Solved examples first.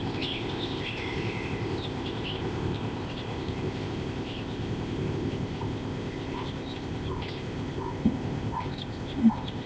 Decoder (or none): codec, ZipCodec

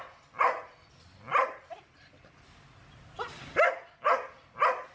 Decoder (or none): none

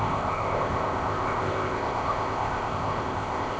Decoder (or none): codec, ZipCodec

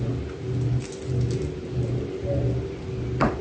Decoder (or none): none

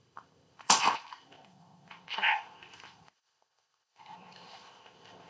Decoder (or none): codec, ZipCodec